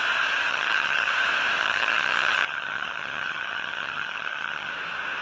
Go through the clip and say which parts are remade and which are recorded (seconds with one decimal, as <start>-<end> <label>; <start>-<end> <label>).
0.0-0.5 recorded; 0.5-1.1 remade; 1.1-1.6 recorded; 1.6-4.7 remade; 4.7-5.2 recorded